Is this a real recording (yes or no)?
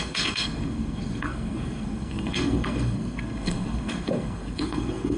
no